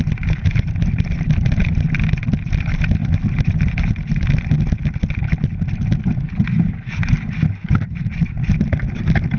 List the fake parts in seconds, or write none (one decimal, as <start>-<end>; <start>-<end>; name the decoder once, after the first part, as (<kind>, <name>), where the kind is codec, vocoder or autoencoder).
none